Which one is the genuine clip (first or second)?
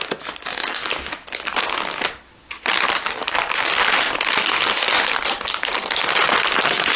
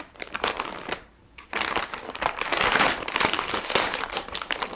first